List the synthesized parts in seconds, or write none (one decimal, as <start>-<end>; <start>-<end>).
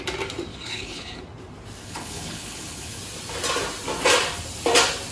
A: 0.5-1.2; 1.8-3.0